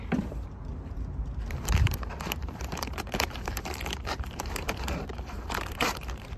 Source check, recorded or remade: remade